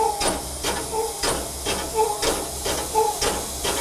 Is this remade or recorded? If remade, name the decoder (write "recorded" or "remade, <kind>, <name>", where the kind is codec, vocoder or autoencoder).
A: recorded